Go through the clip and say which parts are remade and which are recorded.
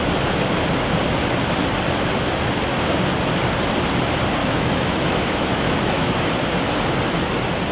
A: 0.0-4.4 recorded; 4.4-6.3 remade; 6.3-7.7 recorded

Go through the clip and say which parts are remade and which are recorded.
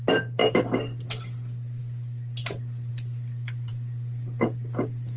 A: 0.0-5.2 recorded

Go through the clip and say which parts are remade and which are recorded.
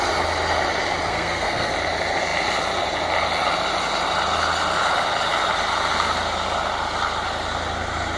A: 0.0-1.1 recorded; 1.1-1.7 remade; 1.7-8.2 recorded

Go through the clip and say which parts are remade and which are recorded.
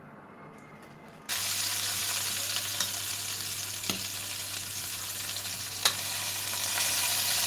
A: 0.0-1.3 recorded; 1.3-2.0 remade; 2.0-3.1 recorded; 3.1-6.7 remade; 6.7-7.5 recorded